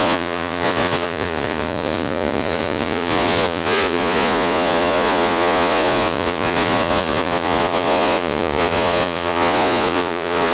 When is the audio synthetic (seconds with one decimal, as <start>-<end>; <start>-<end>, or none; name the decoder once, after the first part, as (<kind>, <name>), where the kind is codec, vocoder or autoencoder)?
0.0-10.5 (vocoder, Vocos)